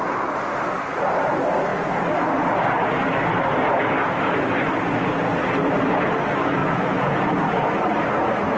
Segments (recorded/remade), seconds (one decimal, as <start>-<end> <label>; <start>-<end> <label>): 0.0-6.6 recorded; 6.6-7.2 remade; 7.2-8.6 recorded